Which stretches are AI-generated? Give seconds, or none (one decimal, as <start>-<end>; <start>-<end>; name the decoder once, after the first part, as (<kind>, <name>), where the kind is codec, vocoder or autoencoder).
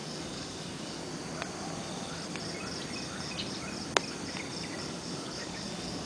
0.0-1.1 (codec, DAC); 4.8-6.1